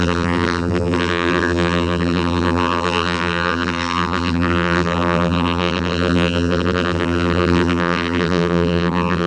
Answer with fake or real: fake